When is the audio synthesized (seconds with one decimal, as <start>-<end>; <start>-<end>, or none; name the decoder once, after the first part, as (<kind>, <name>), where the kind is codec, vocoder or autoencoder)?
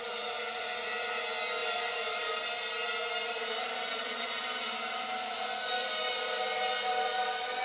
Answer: 0.0-1.2 (vocoder, BigVGAN v2); 1.6-2.3; 3.4-5.5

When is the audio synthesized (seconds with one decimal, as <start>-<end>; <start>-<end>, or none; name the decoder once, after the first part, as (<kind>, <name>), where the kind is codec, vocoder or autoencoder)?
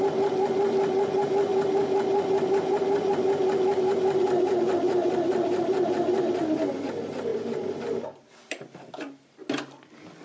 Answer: 1.5-3.1 (vocoder, BigVGAN v2); 5.0-5.9; 7.3-8.9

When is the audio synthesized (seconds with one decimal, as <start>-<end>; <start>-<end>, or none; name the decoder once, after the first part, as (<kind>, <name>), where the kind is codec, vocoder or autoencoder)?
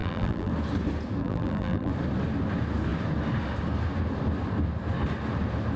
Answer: 0.0-0.5 (vocoder, BigVGAN v2); 1.2-1.9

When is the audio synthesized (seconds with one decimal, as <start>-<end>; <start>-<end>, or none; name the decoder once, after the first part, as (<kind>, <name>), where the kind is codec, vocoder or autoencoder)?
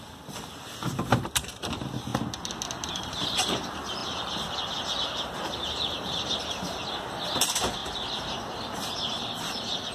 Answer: 0.0-2.1 (vocoder, BigVGAN v2); 2.9-9.9